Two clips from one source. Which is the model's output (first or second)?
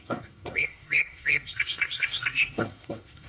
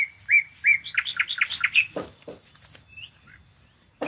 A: first